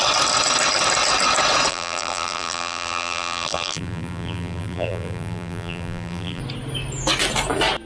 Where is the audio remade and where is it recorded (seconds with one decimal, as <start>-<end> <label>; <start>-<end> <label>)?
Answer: 0.0-1.7 recorded; 1.7-6.4 remade; 6.4-7.9 recorded